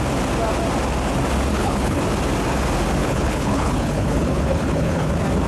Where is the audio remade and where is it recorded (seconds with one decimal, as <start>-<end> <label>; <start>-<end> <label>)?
0.0-1.5 recorded; 1.5-2.0 remade; 2.0-3.0 recorded; 3.0-5.1 remade; 5.1-5.5 recorded

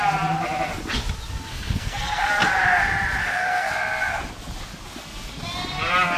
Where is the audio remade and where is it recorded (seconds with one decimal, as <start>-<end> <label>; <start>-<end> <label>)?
0.0-1.5 recorded; 1.5-2.3 remade; 2.3-3.2 recorded; 3.2-3.7 remade; 3.7-6.2 recorded